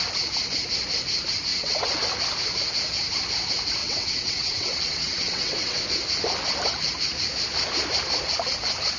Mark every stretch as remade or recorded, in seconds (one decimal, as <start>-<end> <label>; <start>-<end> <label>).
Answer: 0.0-1.5 recorded; 1.5-2.0 remade; 2.0-3.8 recorded; 3.8-5.8 remade; 5.8-9.0 recorded